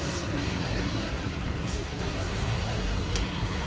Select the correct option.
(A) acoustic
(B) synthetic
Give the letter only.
B